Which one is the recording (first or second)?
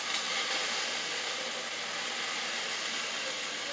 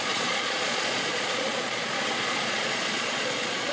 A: first